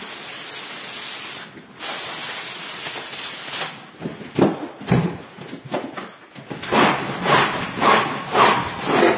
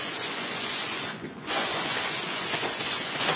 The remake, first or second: second